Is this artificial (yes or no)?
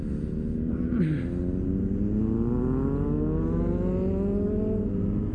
no